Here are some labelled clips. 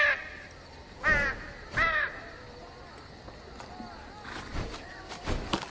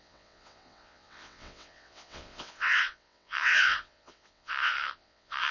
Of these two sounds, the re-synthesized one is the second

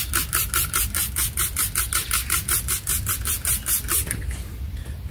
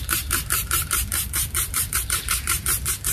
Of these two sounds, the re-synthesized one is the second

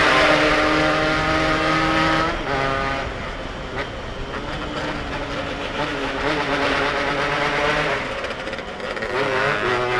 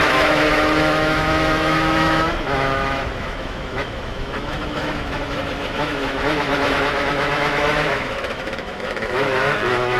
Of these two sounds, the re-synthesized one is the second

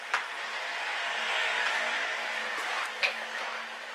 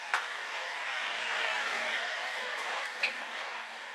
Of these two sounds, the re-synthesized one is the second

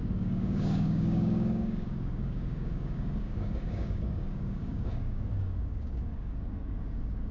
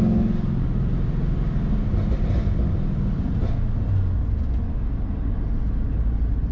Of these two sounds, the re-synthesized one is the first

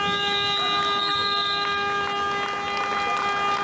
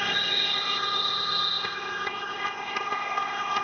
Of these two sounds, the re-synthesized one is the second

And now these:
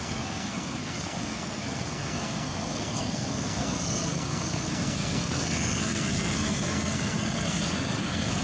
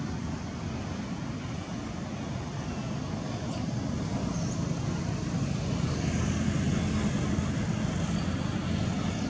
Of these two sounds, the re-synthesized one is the first